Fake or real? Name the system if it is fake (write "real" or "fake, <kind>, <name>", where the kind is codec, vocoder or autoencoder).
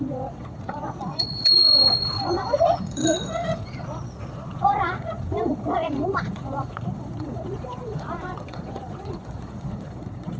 fake, vocoder, Vocos